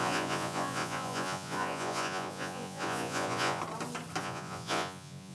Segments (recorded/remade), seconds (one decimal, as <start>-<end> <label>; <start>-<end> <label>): 0.0-3.6 remade; 3.6-4.2 recorded; 4.2-5.3 remade